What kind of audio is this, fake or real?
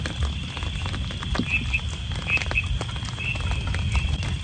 real